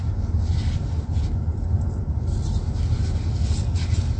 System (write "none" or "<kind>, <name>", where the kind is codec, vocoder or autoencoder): none